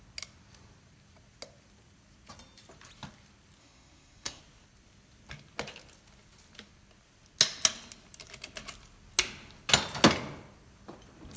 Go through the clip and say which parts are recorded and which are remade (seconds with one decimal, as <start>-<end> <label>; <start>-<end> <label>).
0.0-3.6 recorded; 3.6-4.4 remade; 4.4-11.4 recorded